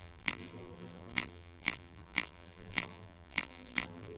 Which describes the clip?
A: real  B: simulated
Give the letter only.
B